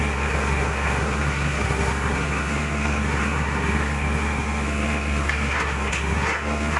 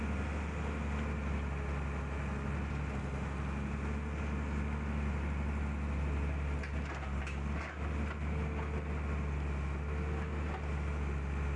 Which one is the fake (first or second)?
first